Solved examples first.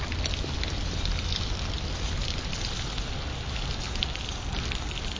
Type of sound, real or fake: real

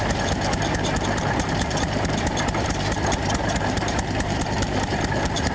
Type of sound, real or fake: fake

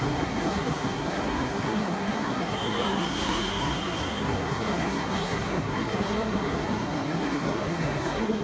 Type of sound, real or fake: fake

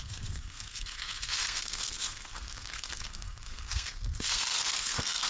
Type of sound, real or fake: fake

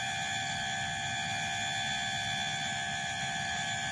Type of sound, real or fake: real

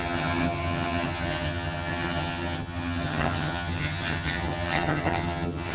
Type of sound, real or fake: fake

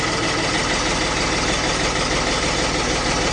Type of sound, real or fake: real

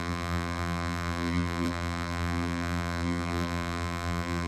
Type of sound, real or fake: fake